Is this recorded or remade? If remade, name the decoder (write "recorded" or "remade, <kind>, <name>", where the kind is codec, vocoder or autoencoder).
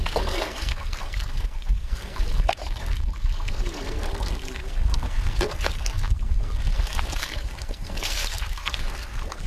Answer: remade, codec, SNAC